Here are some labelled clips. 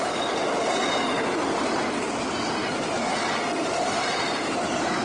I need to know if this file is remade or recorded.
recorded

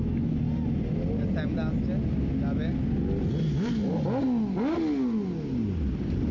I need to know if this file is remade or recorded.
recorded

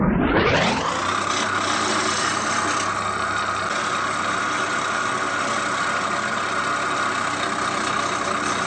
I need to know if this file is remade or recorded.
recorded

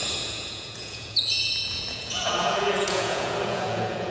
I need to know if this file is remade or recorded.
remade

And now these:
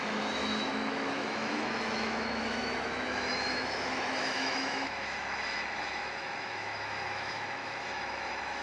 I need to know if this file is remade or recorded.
remade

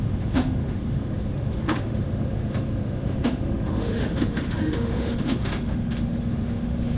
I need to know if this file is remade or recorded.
remade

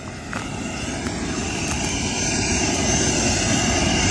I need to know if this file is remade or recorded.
recorded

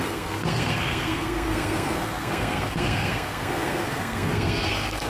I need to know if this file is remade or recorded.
remade